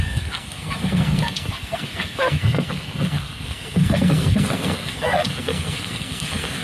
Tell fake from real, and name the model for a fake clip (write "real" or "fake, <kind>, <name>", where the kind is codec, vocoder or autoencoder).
fake, codec, SNAC